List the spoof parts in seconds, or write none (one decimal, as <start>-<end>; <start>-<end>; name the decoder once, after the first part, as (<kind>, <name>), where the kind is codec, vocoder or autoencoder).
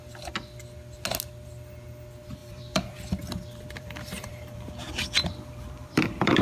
2.4-6.4 (vocoder, BigVGAN v2)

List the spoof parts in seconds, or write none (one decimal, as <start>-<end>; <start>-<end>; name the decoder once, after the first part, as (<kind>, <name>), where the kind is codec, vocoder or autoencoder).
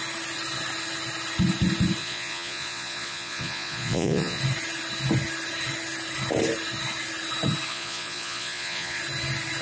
2.0-4.4 (vocoder, Vocos); 7.7-9.0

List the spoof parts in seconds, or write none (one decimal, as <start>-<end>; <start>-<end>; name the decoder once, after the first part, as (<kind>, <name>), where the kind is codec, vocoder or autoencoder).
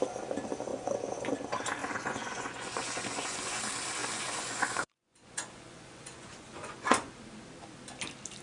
0.7-1.3 (vocoder, Vocos); 1.8-3.6; 4.0-7.1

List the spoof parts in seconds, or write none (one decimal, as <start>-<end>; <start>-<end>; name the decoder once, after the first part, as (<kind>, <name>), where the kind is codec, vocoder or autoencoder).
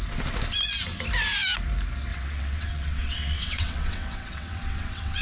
2.1-5.2 (vocoder, WaveNeXt)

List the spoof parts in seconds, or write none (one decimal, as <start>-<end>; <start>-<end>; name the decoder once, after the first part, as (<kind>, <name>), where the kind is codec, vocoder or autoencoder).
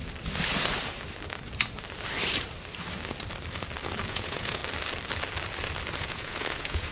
4.1-4.6 (vocoder, Vocos); 6.0-6.9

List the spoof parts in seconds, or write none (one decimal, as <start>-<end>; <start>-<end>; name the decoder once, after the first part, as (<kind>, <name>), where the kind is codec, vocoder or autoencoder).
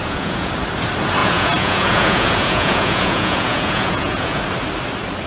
0.0-0.5 (vocoder, Vocos); 1.2-4.4